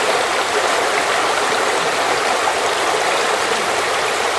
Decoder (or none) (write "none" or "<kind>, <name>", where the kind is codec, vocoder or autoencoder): none